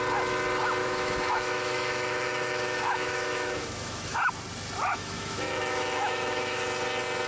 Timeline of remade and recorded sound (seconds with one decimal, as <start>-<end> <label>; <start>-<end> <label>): 0.0-0.8 recorded; 0.8-4.3 remade; 4.3-4.9 recorded; 4.9-6.6 remade; 6.6-7.3 recorded